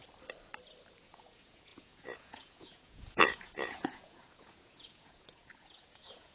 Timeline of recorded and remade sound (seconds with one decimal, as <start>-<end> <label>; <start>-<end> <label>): 0.0-1.0 recorded; 1.0-6.3 remade